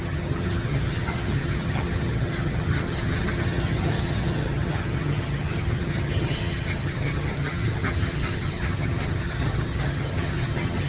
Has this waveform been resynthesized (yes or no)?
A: yes